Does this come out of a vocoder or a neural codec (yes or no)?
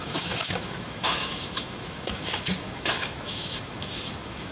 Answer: yes